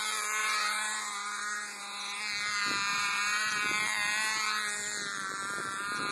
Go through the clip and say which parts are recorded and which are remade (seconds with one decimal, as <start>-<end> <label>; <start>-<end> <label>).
0.0-0.4 recorded; 0.4-2.2 remade; 2.2-2.9 recorded; 2.9-3.6 remade; 3.6-6.1 recorded